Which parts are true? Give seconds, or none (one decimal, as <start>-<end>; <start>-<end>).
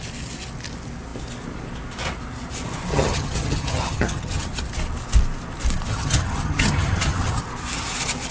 0.0-2.9; 4.5-5.9; 7.4-8.3